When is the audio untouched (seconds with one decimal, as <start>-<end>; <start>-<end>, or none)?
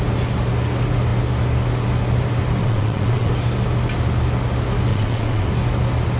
0.0-2.6; 3.3-4.9; 5.5-6.2